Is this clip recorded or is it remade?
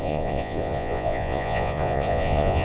remade